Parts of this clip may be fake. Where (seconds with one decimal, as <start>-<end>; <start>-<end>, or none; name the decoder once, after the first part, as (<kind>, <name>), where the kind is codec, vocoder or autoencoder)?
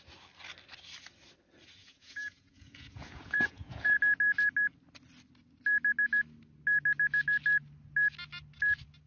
1.8-4.0 (vocoder, Vocos)